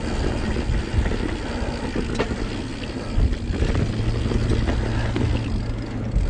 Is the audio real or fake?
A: real